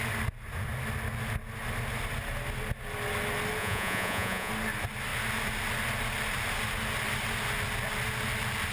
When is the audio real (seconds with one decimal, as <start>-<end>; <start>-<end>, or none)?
0.0-3.6; 4.5-8.7